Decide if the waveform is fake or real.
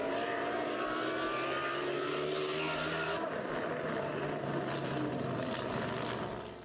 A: real